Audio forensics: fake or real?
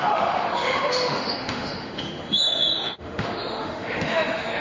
fake